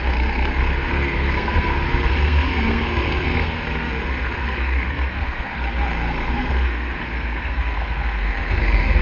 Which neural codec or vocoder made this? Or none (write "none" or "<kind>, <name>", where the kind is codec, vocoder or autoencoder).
codec, SNAC